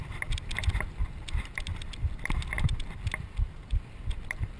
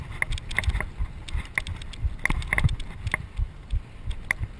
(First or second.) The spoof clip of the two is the first